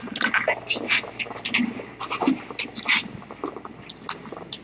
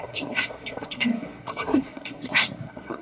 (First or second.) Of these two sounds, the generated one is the second